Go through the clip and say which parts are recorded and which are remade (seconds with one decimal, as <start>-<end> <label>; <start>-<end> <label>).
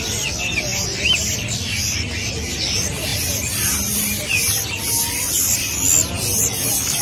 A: 0.0-7.0 recorded